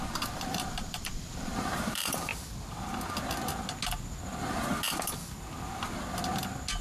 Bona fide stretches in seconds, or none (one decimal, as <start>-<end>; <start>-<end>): 2.3-6.8